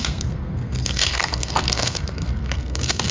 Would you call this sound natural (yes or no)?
no